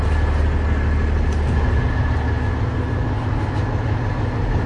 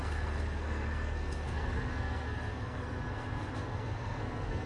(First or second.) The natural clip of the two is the first